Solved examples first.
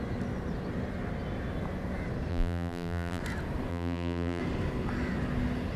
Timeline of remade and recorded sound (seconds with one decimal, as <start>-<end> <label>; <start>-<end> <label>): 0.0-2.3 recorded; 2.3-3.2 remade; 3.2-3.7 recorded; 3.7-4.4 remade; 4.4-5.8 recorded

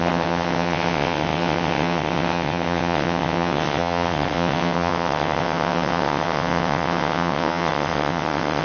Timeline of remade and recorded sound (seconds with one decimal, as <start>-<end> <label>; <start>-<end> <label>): 0.0-8.6 remade

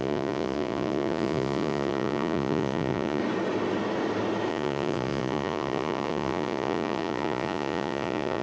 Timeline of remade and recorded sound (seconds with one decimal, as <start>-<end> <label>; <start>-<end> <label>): 0.0-3.2 remade; 3.2-4.5 recorded; 4.5-8.4 remade

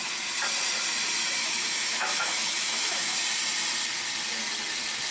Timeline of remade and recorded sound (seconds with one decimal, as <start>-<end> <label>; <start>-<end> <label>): 0.0-1.4 recorded; 1.4-3.2 remade; 3.2-5.1 recorded

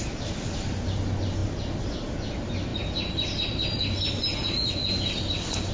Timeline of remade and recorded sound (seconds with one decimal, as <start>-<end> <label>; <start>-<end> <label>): 0.0-5.7 recorded

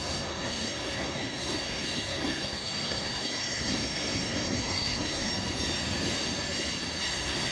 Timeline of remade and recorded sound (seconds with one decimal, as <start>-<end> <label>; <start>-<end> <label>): 0.0-5.3 remade; 5.3-7.1 recorded; 7.1-7.5 remade

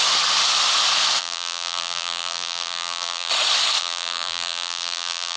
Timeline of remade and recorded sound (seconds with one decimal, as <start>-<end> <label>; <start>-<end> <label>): 0.0-1.2 recorded; 1.2-3.3 remade; 3.3-3.8 recorded; 3.8-5.4 remade

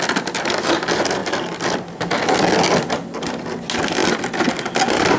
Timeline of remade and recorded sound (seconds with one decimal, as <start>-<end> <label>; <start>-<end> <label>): 0.0-5.2 recorded